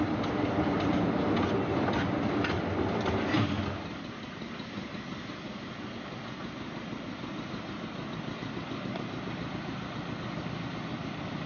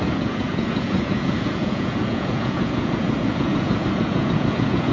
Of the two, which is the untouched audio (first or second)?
first